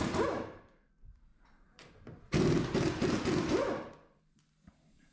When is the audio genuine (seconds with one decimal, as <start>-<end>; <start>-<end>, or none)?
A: 0.0-1.3; 4.2-5.1